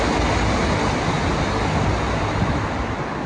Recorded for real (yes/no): yes